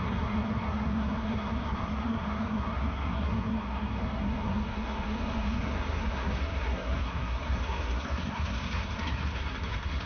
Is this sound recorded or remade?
remade